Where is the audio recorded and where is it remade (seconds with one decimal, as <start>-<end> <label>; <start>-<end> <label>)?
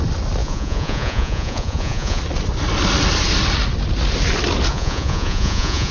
0.0-0.4 recorded; 0.4-2.2 remade; 2.2-4.7 recorded; 4.7-5.9 remade